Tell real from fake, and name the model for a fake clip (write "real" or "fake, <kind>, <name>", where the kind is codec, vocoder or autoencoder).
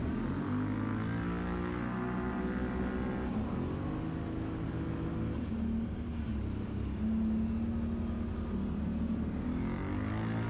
real